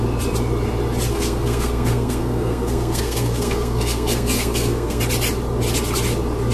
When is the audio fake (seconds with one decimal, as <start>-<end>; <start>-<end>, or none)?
1.1-5.0